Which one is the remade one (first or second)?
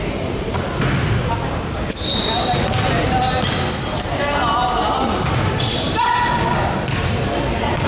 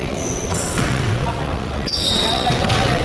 second